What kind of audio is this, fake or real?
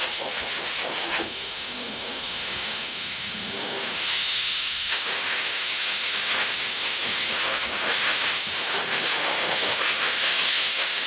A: fake